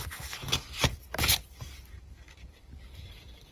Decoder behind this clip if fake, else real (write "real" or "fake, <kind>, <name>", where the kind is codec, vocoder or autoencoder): fake, codec, DAC